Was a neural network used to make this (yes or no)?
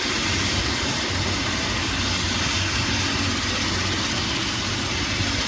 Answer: no